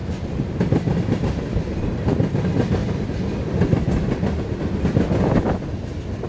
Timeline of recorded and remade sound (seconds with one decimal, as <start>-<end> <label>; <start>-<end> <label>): 0.0-1.4 remade; 1.4-6.3 recorded